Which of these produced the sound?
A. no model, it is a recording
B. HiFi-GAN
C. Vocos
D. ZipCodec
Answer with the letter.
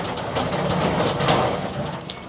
A